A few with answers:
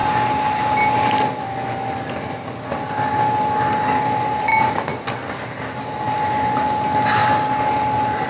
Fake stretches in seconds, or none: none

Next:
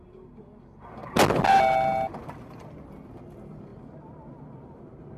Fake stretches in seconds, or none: none

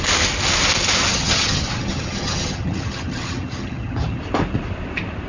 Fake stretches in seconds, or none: 1.1-4.2 (vocoder, HiFi-GAN)

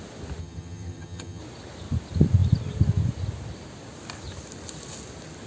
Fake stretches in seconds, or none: 0.4-1.4 (vocoder, HiFi-GAN)

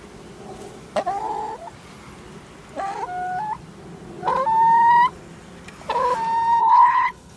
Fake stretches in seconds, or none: 6.6-7.4 (codec, HILCodec)

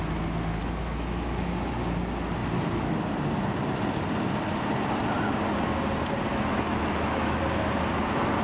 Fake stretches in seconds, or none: 0.6-1.7 (autoencoder, DAC-VAE); 6.3-7.4

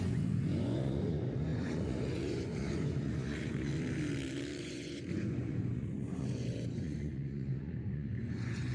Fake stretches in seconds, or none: 0.0-3.7 (vocoder, Vocos); 4.6-8.7

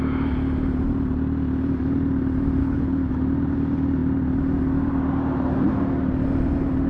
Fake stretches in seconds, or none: 2.6-3.1 (codec, HILCodec)